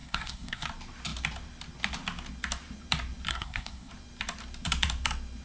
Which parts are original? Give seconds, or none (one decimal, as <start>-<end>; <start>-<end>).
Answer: 0.7-3.3; 3.9-5.4